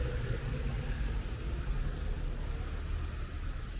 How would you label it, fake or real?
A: real